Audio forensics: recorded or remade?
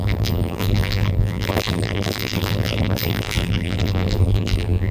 remade